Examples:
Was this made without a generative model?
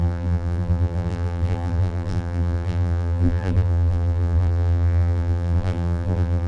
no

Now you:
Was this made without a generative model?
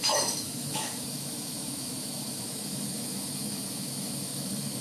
no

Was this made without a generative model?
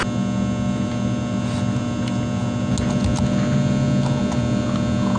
yes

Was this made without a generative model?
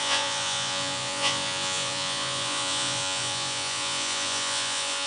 no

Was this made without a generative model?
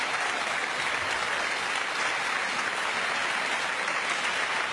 yes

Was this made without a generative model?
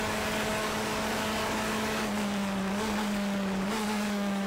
no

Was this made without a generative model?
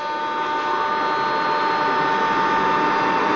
yes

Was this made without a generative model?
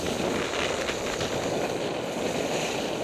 yes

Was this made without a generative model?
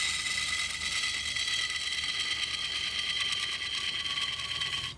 yes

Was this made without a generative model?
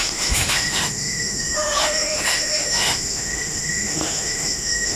no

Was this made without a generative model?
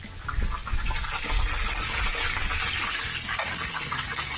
yes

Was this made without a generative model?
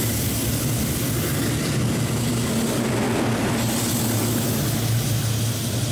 yes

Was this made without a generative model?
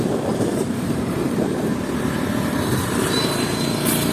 no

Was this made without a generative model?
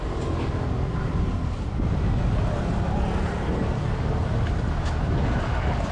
yes